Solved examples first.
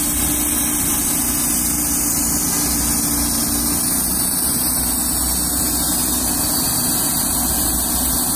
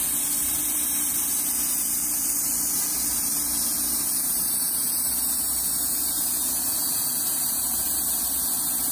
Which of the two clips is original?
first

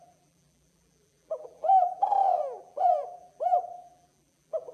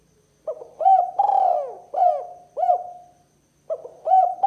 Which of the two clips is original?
second